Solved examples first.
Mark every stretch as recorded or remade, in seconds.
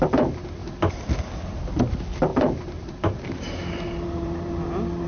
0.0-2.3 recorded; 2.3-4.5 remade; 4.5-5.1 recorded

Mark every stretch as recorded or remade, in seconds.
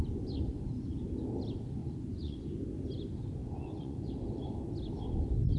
0.0-1.8 recorded; 1.8-2.4 remade; 2.4-3.4 recorded; 3.4-4.1 remade; 4.1-5.6 recorded